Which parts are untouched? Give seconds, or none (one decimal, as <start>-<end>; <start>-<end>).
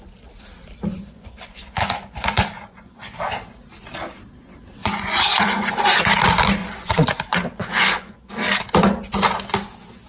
0.0-0.9; 3.2-4.8; 5.7-6.6; 8.3-10.1